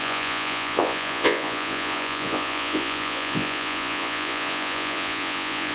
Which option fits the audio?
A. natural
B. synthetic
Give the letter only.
B